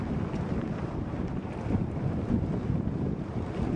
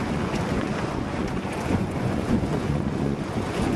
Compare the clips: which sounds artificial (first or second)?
second